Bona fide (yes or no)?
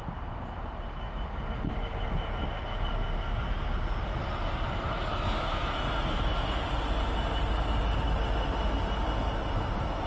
yes